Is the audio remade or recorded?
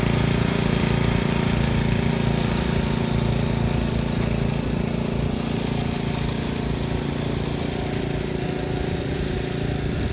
recorded